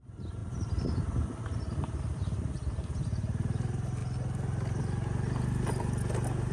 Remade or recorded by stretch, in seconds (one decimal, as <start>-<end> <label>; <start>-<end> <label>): 0.0-4.0 remade; 4.0-6.5 recorded